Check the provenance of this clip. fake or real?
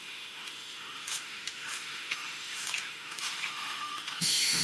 fake